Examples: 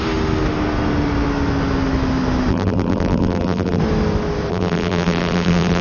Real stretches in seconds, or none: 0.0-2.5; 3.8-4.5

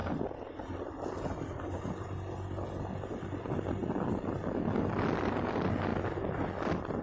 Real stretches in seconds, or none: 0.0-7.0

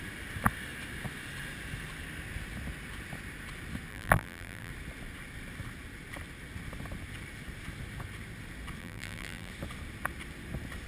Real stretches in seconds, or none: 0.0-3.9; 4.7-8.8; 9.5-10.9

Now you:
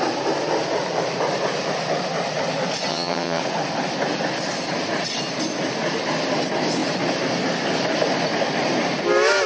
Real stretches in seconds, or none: 0.0-2.9; 3.4-9.5

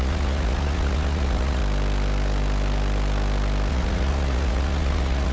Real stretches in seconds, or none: 1.6-3.7

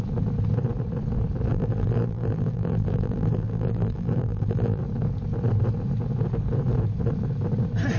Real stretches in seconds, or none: 0.0-1.5; 4.8-8.0

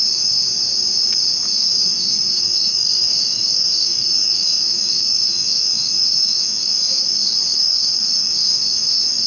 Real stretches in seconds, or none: 0.4-1.5